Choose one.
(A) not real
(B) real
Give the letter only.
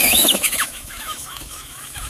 A